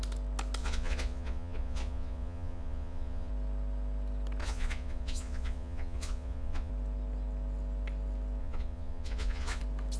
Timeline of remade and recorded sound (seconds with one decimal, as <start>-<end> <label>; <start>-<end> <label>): 0.0-0.6 recorded; 0.6-3.3 remade; 3.3-4.4 recorded; 4.4-6.7 remade; 6.7-8.4 recorded; 8.4-9.6 remade; 9.6-10.0 recorded